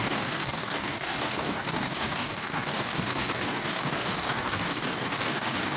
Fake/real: fake